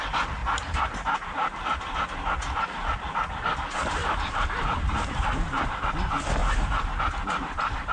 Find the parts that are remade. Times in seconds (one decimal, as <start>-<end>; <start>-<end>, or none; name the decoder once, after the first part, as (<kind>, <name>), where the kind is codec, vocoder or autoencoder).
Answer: 0.4-1.6 (vocoder, BigVGAN v2); 4.0-5.9; 6.4-7.0